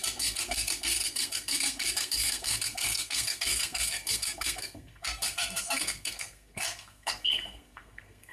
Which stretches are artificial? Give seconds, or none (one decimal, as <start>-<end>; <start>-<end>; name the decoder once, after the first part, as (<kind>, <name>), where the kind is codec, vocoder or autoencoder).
0.0-8.3 (codec, SNAC)